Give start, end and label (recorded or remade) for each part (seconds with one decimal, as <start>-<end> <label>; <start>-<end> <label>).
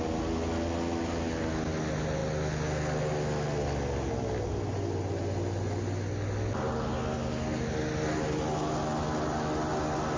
0.0-10.2 recorded